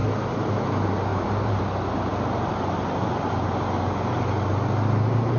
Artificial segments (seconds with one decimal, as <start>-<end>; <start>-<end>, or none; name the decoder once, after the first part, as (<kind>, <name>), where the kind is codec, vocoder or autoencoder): 0.0-0.5 (vocoder, BigVGAN v2); 1.1-1.6